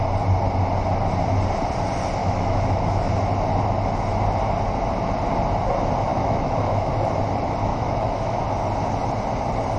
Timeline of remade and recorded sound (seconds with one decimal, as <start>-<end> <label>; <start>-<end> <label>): 0.0-2.2 recorded; 2.2-3.1 remade; 3.1-6.1 recorded; 6.1-6.9 remade; 6.9-7.7 recorded; 7.7-8.4 remade; 8.4-9.8 recorded